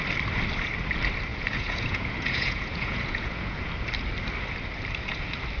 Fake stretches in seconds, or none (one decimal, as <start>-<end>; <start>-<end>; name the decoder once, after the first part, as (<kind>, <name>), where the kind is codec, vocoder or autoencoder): 1.3-3.7 (vocoder, Vocos)